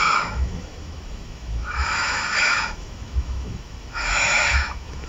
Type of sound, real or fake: fake